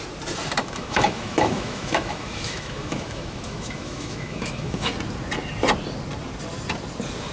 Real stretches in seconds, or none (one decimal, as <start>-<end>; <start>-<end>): 0.0-0.6; 4.9-7.3